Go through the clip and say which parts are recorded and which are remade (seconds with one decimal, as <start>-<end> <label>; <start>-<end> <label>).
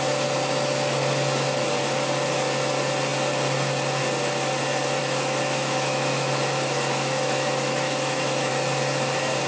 0.0-5.0 recorded; 5.0-8.5 remade; 8.5-9.5 recorded